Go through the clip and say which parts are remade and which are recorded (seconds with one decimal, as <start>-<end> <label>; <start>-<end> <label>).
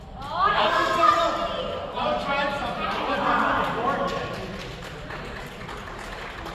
0.0-0.5 recorded; 0.5-1.1 remade; 1.1-6.5 recorded